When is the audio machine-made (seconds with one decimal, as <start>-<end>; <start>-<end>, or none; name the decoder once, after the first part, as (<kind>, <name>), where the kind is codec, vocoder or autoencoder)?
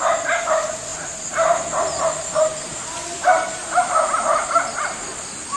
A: none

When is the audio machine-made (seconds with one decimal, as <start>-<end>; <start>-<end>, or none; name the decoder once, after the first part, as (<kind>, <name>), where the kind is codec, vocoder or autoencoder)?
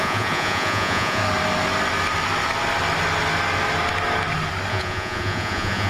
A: 0.0-1.2 (vocoder, Vocos); 4.7-5.9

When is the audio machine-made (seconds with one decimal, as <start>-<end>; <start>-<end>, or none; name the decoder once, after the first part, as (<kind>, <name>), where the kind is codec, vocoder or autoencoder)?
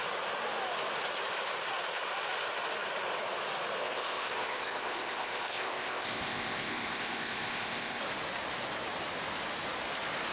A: 3.8-8.0 (codec, ZipCodec)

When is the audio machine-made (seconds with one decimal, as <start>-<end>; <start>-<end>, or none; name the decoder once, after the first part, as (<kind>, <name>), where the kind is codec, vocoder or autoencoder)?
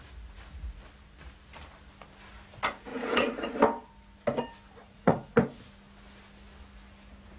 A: 2.9-3.5 (vocoder, Vocos); 4.8-5.3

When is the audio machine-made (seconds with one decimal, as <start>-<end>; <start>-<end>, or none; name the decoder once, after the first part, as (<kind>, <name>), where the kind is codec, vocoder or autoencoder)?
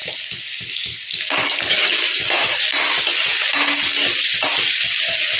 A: 1.9-2.6 (autoencoder, DAC-VAE)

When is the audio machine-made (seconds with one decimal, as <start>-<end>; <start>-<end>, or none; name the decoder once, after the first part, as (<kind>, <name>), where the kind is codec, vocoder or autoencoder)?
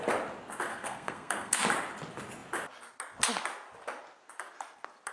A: 0.7-1.6 (codec, SNAC)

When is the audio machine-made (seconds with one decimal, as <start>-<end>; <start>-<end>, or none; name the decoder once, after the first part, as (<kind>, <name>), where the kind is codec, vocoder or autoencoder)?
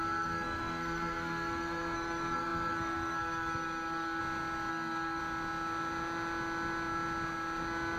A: 0.0-4.2 (codec, SNAC); 4.7-5.2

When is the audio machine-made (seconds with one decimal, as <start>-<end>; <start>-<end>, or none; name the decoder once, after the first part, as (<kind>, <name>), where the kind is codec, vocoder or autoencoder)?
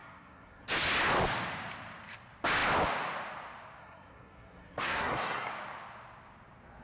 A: 0.0-0.7 (codec, SNAC); 3.8-5.5